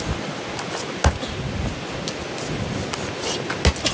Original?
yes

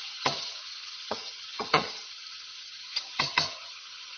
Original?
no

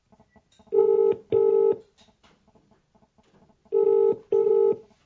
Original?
yes